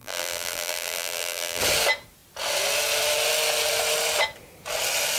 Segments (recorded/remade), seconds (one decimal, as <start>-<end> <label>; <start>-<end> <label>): 0.0-1.6 remade; 1.6-5.2 recorded